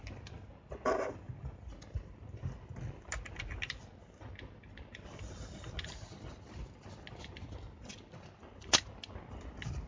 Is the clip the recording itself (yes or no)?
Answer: yes